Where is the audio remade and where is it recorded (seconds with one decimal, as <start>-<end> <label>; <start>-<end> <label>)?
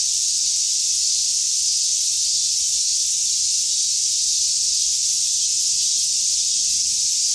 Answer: 0.0-7.3 recorded